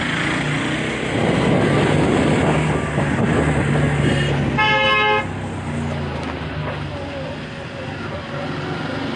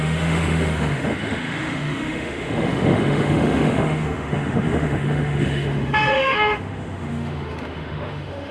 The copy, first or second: second